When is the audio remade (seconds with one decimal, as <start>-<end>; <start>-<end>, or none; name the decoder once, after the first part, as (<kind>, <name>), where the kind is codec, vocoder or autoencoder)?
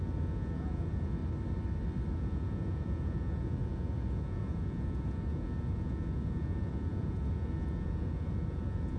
0.0-1.2 (vocoder, Vocos); 2.1-9.0